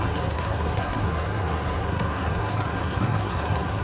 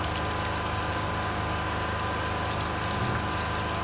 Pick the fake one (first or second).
first